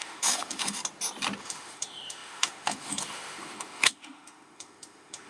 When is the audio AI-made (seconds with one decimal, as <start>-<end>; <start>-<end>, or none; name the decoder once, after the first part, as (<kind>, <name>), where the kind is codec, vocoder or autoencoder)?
0.0-0.8 (autoencoder, DAC-VAE); 1.4-5.3